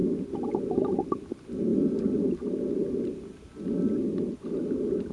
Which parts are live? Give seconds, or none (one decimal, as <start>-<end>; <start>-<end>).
0.0-5.1